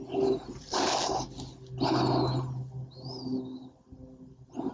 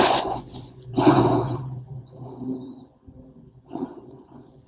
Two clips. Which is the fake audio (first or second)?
second